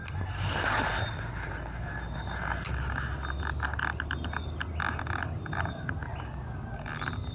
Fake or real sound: real